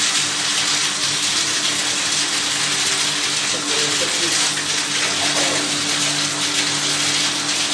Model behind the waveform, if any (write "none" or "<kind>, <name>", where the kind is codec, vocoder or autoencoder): none